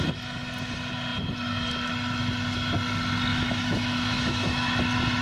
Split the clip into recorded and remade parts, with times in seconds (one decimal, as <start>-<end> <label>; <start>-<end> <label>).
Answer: 0.0-3.3 recorded; 3.3-4.8 remade; 4.8-5.2 recorded